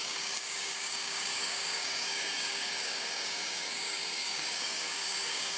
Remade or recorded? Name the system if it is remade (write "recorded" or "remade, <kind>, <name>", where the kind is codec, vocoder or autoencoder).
remade, codec, DAC